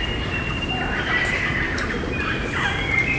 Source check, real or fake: real